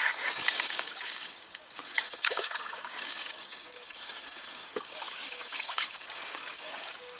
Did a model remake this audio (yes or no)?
yes